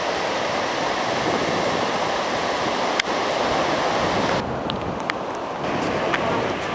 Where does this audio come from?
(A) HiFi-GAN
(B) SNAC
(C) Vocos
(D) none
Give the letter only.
D